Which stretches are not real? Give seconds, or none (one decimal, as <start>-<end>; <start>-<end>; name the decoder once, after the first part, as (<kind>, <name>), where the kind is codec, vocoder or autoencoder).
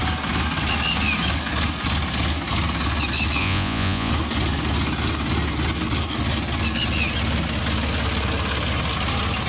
3.4-4.1 (vocoder, Vocos)